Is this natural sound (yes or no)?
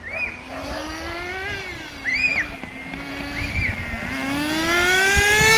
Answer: yes